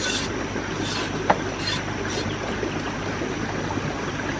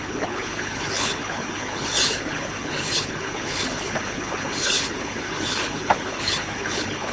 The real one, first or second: first